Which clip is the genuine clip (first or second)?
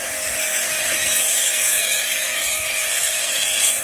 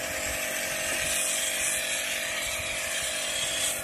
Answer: second